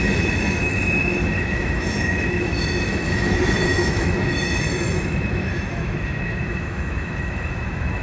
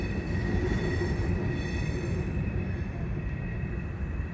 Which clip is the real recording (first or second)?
second